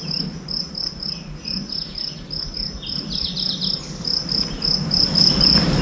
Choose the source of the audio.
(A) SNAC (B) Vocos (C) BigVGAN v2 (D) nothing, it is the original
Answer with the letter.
D